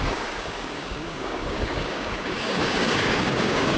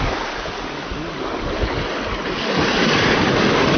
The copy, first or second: first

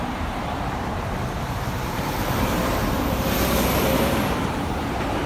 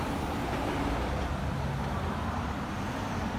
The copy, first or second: first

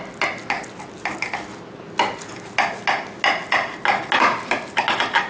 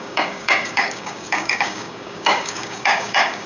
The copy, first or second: second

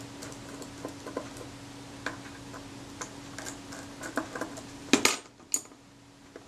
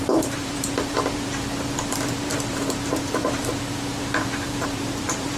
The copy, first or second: second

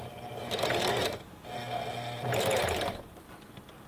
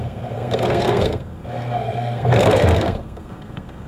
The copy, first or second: second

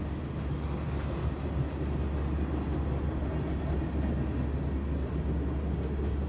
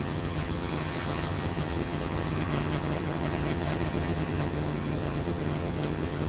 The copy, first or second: second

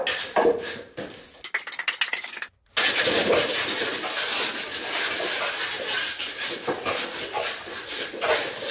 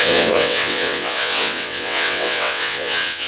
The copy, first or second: second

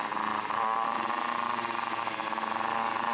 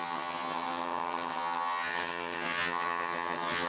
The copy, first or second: second